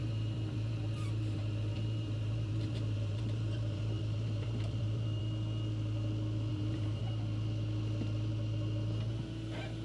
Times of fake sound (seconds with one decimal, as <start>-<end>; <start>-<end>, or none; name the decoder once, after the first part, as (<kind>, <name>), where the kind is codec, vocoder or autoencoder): 0.0-5.2 (vocoder, BigVGAN v2); 6.5-7.0